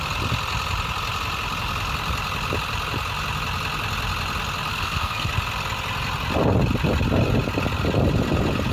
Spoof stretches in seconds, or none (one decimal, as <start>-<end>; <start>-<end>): 4.7-5.3